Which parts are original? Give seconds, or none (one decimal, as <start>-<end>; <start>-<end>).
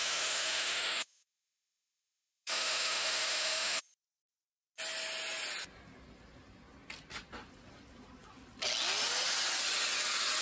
3.8-10.4